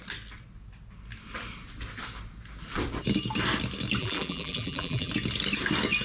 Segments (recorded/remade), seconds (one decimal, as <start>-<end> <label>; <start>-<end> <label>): 0.0-4.0 recorded; 4.0-5.1 remade; 5.1-6.0 recorded